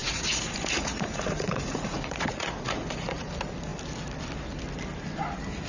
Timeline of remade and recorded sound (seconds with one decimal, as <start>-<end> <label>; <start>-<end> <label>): 0.0-3.3 remade; 3.3-5.7 recorded

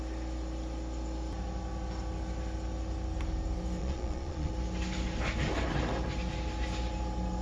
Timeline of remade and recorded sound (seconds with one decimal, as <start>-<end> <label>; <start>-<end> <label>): 0.0-3.8 recorded; 3.8-4.5 remade; 4.5-7.4 recorded

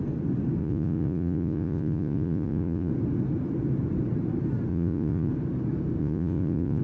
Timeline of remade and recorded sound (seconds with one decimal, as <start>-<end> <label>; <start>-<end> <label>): 0.0-0.6 recorded; 0.6-2.9 remade; 2.9-4.7 recorded; 4.7-5.3 remade; 5.3-6.0 recorded; 6.0-6.8 remade